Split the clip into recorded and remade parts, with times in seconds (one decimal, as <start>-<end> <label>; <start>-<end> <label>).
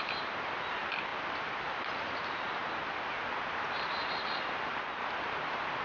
0.0-5.8 recorded